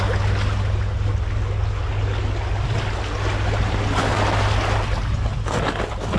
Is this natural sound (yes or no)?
yes